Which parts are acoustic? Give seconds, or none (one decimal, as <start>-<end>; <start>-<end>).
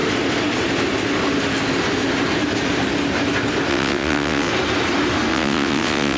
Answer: 0.0-3.7; 4.5-5.3